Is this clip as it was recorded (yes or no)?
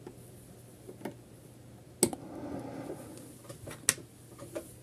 yes